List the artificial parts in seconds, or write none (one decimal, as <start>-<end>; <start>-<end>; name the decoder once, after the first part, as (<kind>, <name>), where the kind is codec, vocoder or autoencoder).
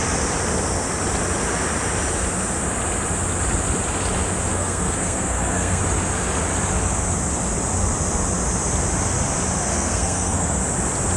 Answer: 4.5-5.8 (codec, SNAC); 9.7-10.6